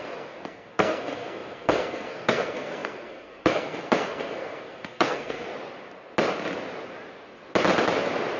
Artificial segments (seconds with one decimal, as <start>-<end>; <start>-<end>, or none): 0.0-5.5